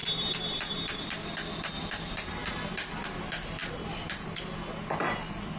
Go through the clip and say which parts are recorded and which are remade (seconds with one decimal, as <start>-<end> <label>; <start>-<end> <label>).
0.0-1.0 remade; 1.0-3.6 recorded; 3.6-4.4 remade; 4.4-5.6 recorded